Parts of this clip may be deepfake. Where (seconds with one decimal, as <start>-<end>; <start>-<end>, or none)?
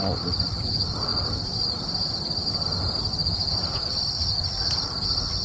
none